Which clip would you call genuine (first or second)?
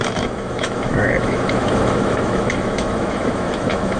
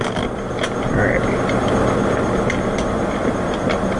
second